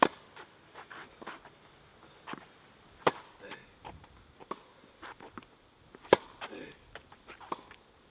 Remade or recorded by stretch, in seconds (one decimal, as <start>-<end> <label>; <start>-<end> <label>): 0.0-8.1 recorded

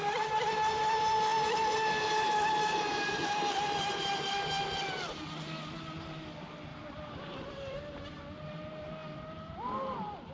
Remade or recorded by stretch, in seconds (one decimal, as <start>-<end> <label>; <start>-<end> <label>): 0.0-1.3 recorded; 1.3-4.6 remade; 4.6-6.7 recorded; 6.7-8.2 remade; 8.2-9.0 recorded; 9.0-10.3 remade

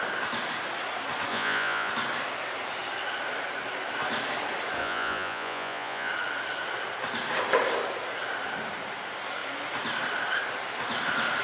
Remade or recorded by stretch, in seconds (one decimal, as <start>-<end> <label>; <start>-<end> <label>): 0.0-1.3 recorded; 1.3-1.9 remade; 1.9-4.8 recorded; 4.8-6.1 remade; 6.1-11.4 recorded